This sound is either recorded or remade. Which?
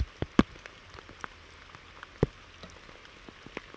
recorded